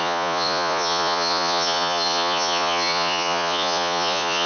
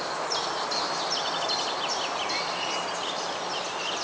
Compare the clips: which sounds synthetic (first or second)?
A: first